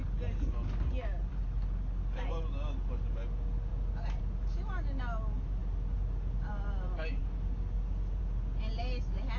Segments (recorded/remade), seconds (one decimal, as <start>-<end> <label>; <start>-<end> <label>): 0.0-9.4 recorded